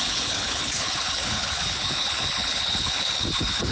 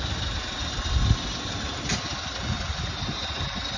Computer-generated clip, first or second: first